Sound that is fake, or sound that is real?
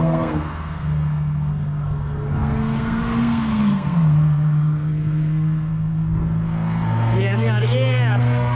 fake